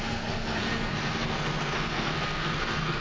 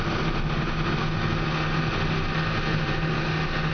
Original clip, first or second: second